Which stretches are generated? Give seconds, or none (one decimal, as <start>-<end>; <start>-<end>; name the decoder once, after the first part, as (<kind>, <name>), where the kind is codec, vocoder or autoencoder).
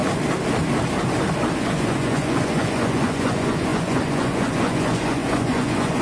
1.6-6.0 (vocoder, Vocos)